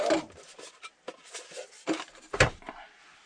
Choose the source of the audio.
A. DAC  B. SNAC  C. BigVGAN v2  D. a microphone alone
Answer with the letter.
D